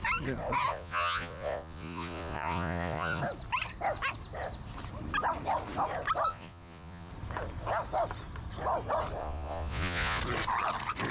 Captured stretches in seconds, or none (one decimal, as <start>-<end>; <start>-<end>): 0.0-0.7; 3.2-6.3; 7.1-9.2; 10.2-11.1